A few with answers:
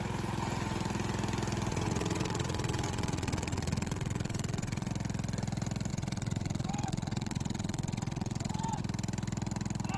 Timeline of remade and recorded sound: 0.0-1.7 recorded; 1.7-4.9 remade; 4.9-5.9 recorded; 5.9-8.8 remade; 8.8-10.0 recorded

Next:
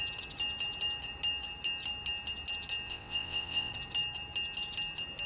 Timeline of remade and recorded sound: 0.0-2.9 recorded; 2.9-3.7 remade; 3.7-5.3 recorded